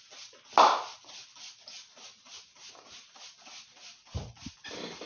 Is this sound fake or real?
real